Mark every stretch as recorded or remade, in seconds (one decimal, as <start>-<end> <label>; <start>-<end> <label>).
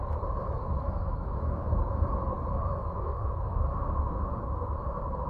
0.0-0.4 recorded; 0.4-1.7 remade; 1.7-2.8 recorded; 2.8-4.3 remade; 4.3-5.3 recorded